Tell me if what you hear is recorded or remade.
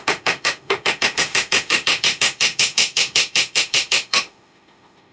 remade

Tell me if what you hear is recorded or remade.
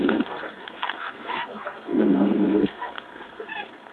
remade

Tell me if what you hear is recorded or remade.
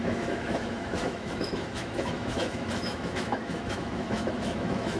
remade